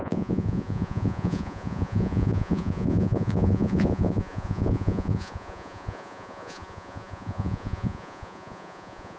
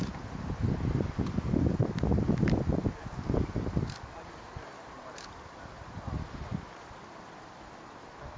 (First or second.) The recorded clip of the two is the second